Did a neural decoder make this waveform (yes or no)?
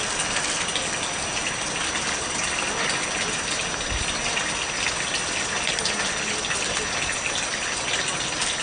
no